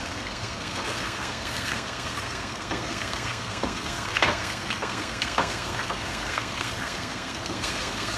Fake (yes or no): yes